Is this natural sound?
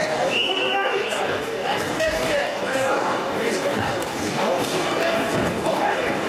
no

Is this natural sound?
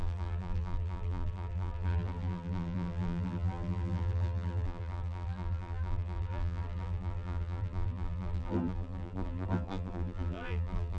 no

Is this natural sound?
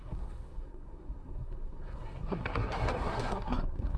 no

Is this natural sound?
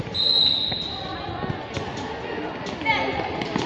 yes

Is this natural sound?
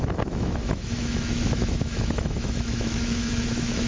no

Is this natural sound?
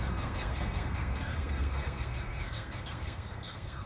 no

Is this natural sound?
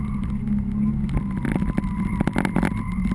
yes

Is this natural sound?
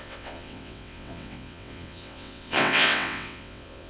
no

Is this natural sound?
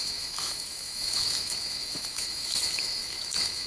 no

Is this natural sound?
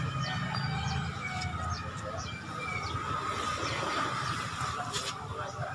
yes